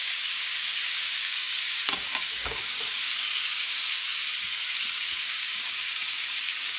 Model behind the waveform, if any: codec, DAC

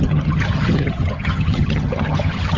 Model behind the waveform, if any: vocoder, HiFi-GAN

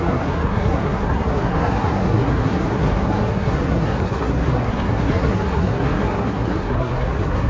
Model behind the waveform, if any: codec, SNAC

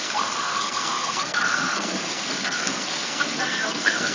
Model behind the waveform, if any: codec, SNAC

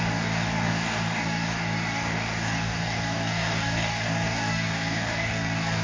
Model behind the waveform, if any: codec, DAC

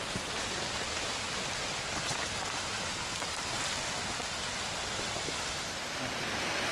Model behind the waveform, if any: none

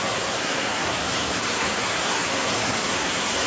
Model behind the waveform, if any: codec, SNAC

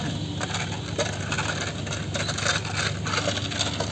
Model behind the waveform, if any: none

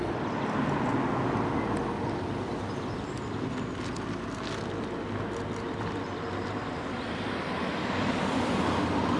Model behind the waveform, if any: none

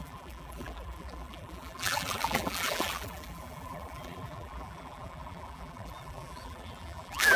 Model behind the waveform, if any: vocoder, BigVGAN v2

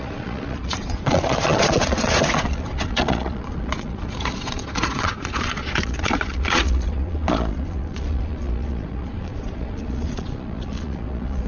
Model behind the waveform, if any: vocoder, Vocos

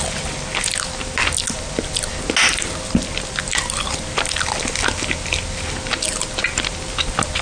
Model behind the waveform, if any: none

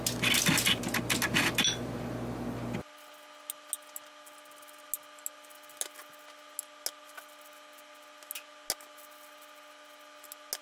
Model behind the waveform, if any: none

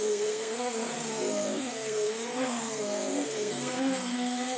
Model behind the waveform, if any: codec, SNAC